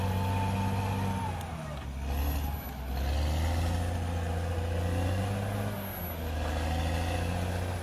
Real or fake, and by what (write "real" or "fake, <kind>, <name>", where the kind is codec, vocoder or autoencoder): real